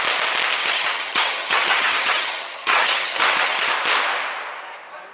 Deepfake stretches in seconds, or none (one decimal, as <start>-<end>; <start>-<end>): 0.6-3.7